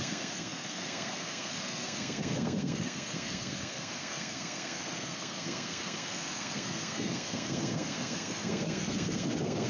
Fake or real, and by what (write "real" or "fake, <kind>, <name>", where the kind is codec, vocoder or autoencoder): fake, codec, SNAC